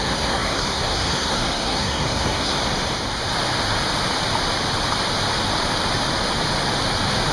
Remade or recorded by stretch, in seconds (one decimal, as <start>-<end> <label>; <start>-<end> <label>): 0.0-2.6 remade; 2.6-7.3 recorded